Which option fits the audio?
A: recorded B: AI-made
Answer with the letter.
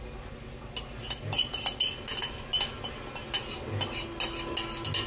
A